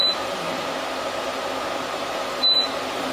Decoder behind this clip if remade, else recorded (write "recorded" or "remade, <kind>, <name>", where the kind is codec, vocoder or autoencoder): remade, vocoder, BigVGAN v2